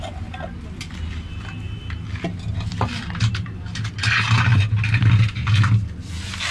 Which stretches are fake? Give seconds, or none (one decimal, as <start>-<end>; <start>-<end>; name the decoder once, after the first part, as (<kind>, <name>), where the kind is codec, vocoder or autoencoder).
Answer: none